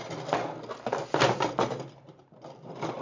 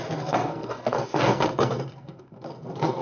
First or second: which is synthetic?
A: second